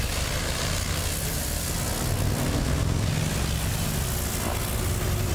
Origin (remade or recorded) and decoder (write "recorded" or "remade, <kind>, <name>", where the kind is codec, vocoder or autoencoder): recorded